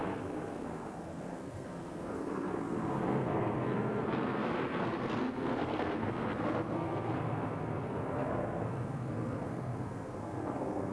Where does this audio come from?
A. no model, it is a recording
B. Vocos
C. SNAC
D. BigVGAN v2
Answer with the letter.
C